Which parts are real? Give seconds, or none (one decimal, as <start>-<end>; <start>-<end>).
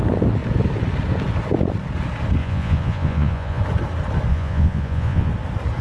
0.0-2.4; 3.6-4.3; 5.3-5.8